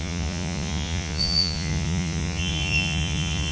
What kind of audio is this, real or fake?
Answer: fake